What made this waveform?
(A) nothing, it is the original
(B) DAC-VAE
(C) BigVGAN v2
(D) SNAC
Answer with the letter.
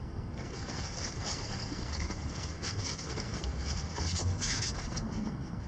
D